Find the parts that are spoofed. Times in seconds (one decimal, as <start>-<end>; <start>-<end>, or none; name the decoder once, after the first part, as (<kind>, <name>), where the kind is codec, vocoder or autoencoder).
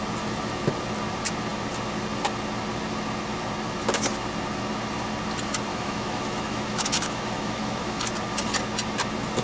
5.7-8.0 (autoencoder, DAC-VAE)